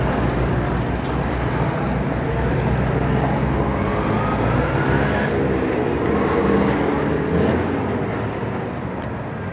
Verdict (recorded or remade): recorded